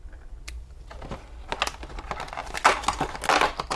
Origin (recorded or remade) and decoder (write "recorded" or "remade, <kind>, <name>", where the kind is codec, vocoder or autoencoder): recorded